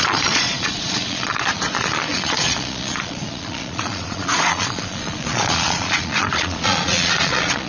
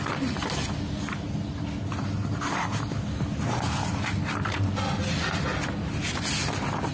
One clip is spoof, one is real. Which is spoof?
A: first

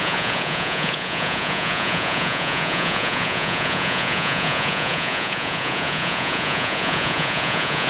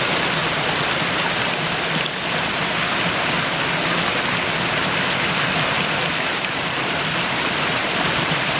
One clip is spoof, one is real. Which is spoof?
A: first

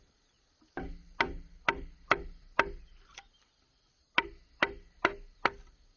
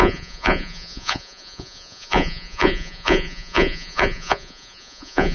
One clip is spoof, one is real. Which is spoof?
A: second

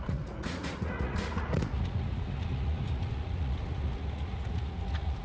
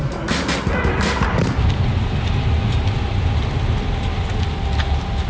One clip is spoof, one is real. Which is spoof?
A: first